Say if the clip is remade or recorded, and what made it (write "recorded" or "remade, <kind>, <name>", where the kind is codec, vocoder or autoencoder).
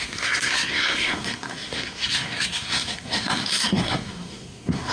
remade, codec, SNAC